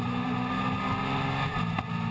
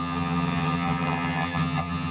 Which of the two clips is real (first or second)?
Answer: first